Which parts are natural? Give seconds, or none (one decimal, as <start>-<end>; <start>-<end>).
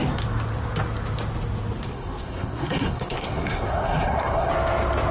0.0-1.9; 4.5-5.1